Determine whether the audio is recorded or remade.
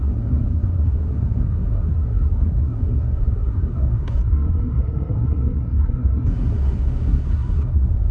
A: remade